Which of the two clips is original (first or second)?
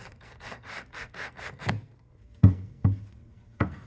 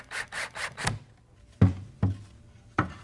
second